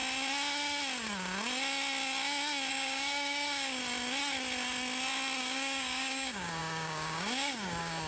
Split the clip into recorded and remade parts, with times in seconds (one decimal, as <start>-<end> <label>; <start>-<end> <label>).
0.0-2.7 recorded; 2.7-3.8 remade; 3.8-5.4 recorded; 5.4-8.1 remade